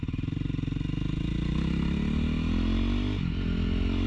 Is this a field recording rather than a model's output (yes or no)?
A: yes